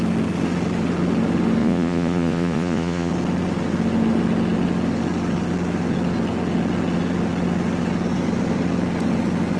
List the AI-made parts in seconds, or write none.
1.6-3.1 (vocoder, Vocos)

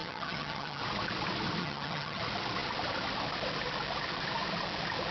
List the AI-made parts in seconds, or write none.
0.0-0.8 (vocoder, HiFi-GAN); 1.6-2.2

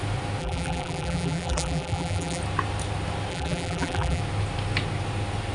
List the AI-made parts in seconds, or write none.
0.4-2.4 (vocoder, BigVGAN v2); 3.3-4.2

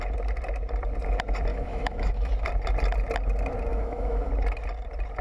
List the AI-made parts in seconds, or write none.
1.5-2.3 (autoencoder, DAC-VAE); 3.7-4.3